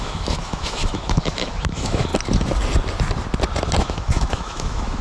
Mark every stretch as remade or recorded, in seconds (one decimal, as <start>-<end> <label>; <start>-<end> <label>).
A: 0.0-2.1 remade; 2.1-3.8 recorded; 3.8-5.0 remade